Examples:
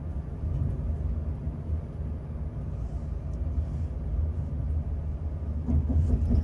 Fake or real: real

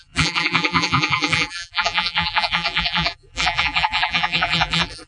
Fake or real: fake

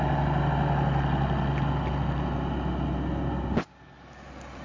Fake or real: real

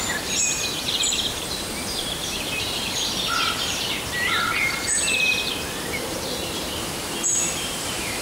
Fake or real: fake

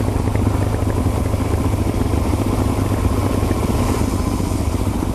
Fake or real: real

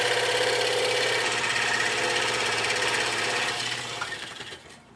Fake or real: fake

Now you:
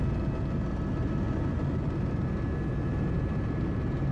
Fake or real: real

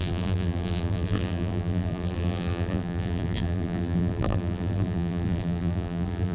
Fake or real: fake